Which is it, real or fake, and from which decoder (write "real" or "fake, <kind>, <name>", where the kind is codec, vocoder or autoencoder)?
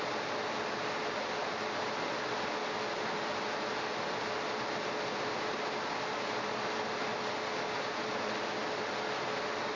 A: real